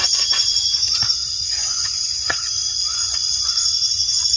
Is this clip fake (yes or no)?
yes